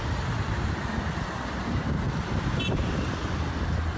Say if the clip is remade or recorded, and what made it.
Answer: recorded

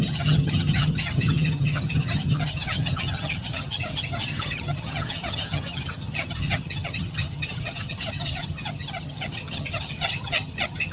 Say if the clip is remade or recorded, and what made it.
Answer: remade, vocoder, HiFi-GAN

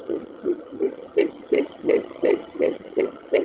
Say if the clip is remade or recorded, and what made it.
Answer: remade, vocoder, HiFi-GAN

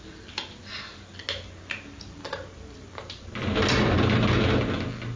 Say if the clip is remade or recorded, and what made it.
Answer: recorded